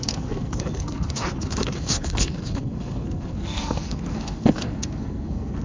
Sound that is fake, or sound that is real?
fake